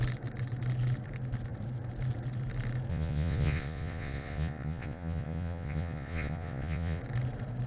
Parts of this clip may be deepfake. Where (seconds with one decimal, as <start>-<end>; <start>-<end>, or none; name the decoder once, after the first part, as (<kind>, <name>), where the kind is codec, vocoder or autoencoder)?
2.9-7.0 (vocoder, Vocos)